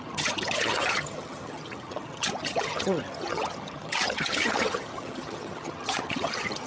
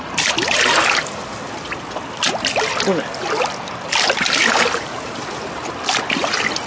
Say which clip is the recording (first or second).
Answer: second